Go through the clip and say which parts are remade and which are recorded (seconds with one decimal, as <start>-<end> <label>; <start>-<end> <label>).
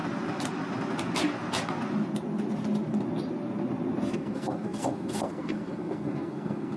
0.0-4.1 recorded; 4.1-6.8 remade